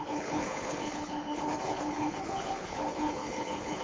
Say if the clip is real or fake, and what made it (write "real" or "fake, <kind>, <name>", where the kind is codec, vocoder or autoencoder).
fake, codec, HILCodec